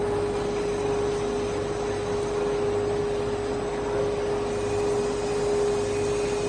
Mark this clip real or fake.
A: real